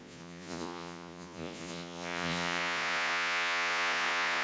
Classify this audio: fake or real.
fake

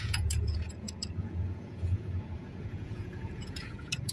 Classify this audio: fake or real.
fake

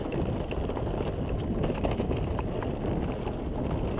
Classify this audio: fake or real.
real